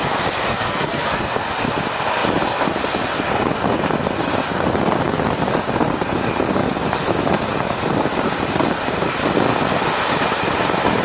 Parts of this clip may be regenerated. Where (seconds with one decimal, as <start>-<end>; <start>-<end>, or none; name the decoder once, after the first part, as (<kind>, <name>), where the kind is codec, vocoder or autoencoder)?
0.5-1.2 (codec, SNAC)